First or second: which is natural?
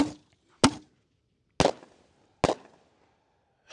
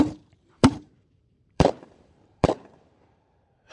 first